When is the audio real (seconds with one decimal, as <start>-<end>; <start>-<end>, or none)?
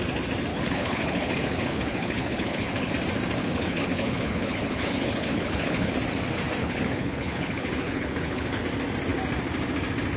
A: 0.0-0.5; 2.9-3.4; 5.9-6.6; 8.6-10.2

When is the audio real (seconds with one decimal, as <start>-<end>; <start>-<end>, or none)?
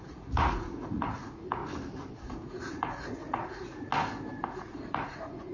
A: 1.6-2.1; 3.9-4.5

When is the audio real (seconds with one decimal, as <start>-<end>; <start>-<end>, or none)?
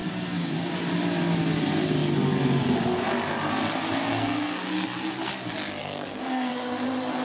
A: 0.5-4.1; 5.3-5.8; 6.5-7.2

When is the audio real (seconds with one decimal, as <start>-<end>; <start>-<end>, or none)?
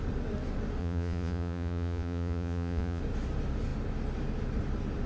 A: 0.0-0.8; 3.0-5.1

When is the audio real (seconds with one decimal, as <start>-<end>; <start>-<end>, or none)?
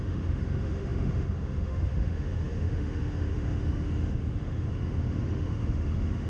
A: none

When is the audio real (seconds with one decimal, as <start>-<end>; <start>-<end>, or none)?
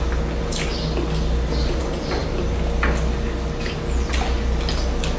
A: 0.0-5.2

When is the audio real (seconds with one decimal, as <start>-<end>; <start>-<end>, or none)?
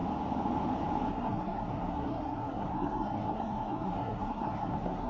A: 0.0-1.1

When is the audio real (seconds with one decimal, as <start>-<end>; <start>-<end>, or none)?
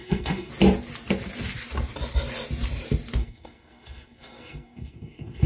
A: 0.5-3.2